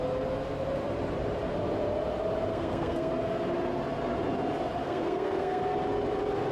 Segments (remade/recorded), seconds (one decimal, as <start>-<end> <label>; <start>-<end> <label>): 0.0-2.5 recorded; 2.5-3.1 remade; 3.1-4.8 recorded; 4.8-5.6 remade; 5.6-6.5 recorded

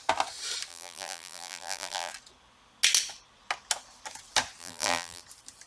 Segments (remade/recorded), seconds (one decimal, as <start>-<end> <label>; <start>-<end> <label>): 0.0-0.7 recorded; 0.7-2.1 remade; 2.1-4.6 recorded; 4.6-5.2 remade; 5.2-5.7 recorded

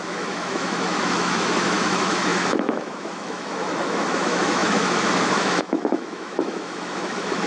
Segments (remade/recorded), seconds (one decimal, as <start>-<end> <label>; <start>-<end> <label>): 0.0-7.5 remade